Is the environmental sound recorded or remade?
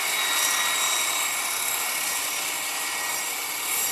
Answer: recorded